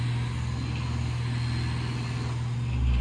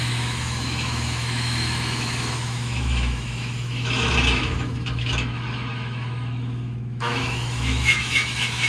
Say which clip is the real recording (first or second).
first